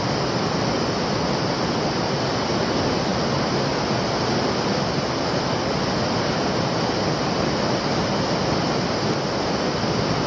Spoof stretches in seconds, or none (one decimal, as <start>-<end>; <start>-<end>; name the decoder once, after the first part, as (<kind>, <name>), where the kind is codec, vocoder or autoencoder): none